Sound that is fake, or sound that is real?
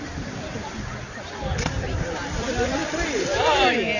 real